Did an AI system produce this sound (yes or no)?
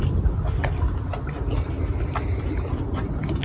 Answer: no